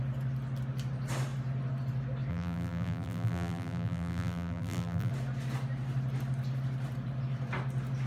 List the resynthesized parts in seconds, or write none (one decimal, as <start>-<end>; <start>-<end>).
2.3-5.1